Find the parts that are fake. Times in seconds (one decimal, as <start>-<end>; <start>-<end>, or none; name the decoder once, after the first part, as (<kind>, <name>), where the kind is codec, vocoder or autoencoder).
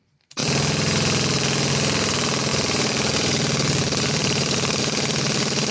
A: 2.5-4.8 (vocoder, BigVGAN v2)